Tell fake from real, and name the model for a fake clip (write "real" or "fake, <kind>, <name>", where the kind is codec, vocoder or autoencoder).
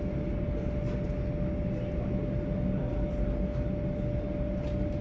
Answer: real